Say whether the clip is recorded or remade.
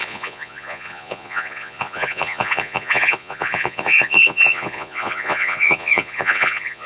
remade